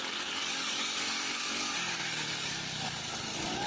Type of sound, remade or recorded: remade